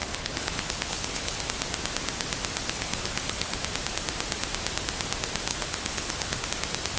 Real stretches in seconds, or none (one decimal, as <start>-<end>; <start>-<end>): 1.4-2.6; 3.6-5.5; 6.5-7.0